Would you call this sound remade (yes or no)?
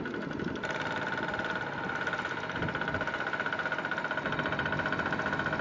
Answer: no